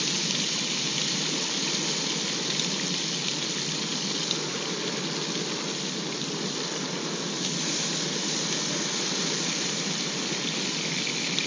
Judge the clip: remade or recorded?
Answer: recorded